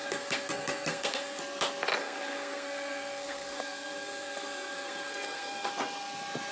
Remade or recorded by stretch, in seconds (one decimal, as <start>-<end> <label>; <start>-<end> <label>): 0.0-1.4 remade; 1.4-2.0 recorded; 2.0-5.7 remade; 5.7-6.5 recorded